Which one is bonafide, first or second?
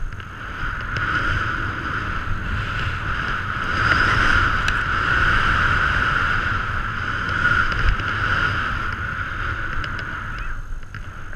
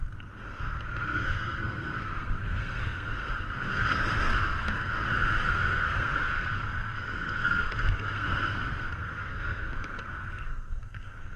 first